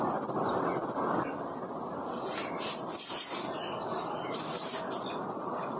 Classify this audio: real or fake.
real